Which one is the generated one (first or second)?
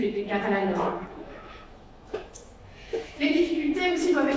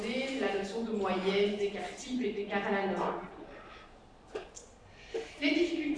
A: first